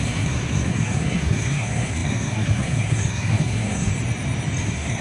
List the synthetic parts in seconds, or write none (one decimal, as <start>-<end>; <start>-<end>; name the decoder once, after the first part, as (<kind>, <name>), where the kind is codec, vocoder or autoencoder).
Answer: 0.0-3.9 (codec, SNAC); 4.6-5.0